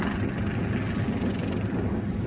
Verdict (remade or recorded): recorded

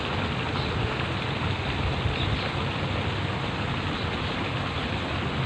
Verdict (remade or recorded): recorded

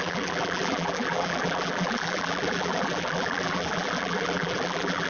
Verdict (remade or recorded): remade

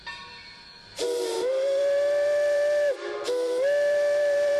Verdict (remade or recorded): remade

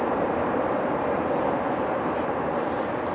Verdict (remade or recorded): recorded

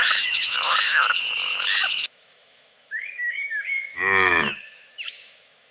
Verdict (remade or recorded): remade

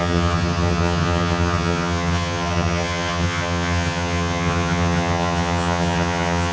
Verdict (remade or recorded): remade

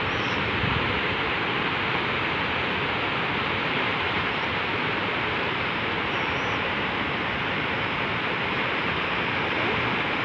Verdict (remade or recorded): remade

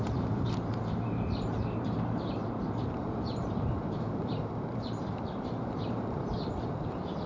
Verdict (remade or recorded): remade